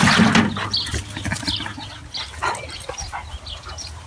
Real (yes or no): yes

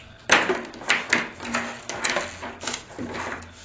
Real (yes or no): yes